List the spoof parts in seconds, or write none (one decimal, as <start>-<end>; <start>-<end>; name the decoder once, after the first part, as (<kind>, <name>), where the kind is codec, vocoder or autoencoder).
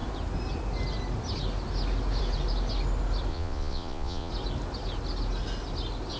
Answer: 3.3-4.3 (vocoder, Vocos)